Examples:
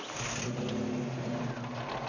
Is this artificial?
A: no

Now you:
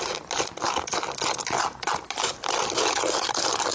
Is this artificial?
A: no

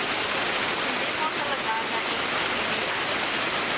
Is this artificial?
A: no